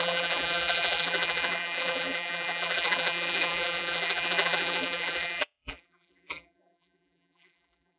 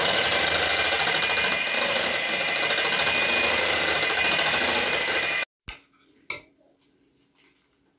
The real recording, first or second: second